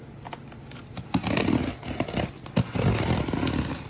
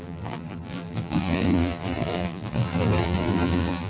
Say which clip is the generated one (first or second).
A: second